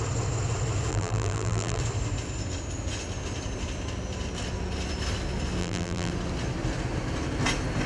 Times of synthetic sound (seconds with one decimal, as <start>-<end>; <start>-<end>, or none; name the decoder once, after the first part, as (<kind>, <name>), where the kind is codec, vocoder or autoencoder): 0.9-1.8 (vocoder, BigVGAN v2); 5.6-6.1